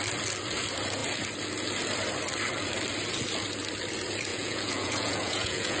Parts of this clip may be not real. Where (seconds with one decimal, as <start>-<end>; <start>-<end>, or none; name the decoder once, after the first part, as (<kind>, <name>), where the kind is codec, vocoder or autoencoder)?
4.3-5.8 (vocoder, Vocos)